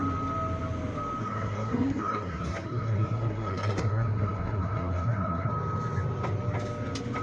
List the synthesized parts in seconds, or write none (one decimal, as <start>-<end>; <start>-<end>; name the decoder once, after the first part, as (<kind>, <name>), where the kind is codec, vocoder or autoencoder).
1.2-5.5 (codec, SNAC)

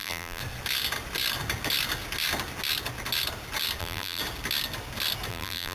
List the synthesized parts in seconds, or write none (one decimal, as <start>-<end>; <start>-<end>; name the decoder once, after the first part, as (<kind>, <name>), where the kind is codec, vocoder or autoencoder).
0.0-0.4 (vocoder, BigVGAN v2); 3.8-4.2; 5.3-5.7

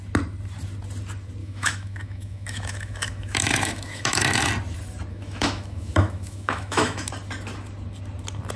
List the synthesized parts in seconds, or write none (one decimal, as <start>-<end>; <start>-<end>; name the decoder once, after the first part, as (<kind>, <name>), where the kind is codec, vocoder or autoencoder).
1.4-4.5 (autoencoder, DAC-VAE); 5.1-7.1

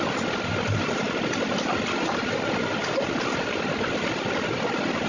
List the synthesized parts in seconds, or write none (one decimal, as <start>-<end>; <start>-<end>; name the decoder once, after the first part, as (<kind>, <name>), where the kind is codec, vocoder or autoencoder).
none

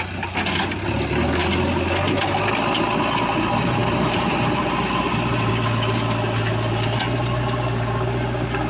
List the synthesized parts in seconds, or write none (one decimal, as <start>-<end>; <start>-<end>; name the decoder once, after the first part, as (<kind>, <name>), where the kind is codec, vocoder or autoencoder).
3.8-5.5 (vocoder, BigVGAN v2)

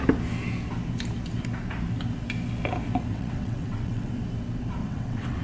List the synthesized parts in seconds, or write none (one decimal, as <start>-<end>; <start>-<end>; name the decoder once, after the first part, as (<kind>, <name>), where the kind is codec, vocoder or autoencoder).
3.1-4.1 (vocoder, WaveNeXt); 4.8-5.4